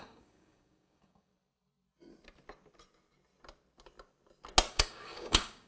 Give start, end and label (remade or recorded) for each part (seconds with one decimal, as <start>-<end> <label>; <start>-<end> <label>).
0.0-1.3 remade; 1.3-4.7 recorded; 4.7-5.7 remade